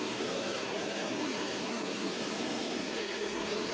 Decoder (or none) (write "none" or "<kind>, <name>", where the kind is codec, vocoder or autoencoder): codec, SNAC